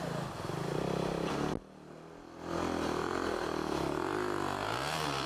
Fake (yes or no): no